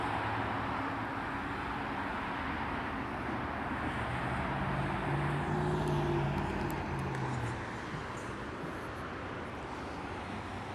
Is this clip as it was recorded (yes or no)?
yes